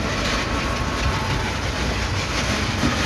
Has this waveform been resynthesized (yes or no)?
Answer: no